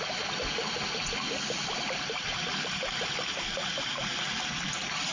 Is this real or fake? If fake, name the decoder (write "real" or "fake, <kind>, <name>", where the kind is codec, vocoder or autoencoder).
real